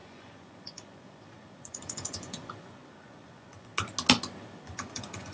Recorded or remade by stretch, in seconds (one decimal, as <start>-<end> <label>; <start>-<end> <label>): 0.0-3.7 remade; 3.7-4.6 recorded; 4.6-5.3 remade